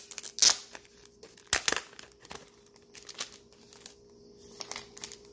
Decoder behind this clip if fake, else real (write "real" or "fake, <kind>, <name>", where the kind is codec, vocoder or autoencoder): real